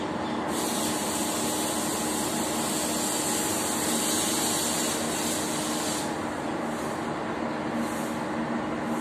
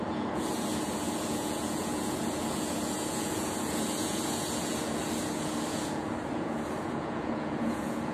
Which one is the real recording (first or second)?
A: first